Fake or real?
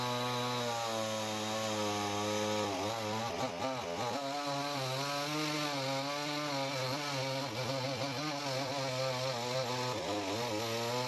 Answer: real